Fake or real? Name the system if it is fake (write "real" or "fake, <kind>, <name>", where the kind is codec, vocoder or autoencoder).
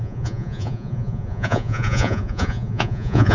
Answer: fake, vocoder, Vocos